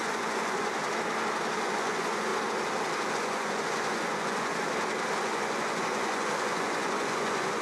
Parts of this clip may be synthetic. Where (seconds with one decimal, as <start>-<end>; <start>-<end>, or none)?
0.0-0.8; 1.6-2.3; 3.1-4.5; 5.2-7.6